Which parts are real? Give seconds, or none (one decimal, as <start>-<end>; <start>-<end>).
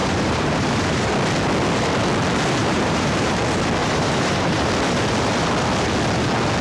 1.1-2.6; 3.4-3.8; 4.7-6.6